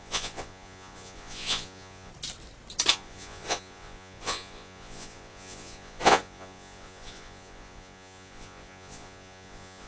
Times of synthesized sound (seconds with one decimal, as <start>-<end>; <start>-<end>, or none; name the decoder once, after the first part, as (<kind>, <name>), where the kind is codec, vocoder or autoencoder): 0.0-2.1 (vocoder, Vocos); 2.9-9.9